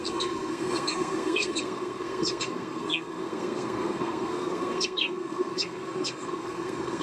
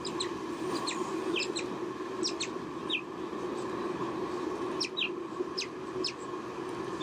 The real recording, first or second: second